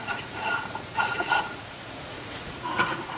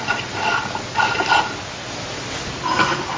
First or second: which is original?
second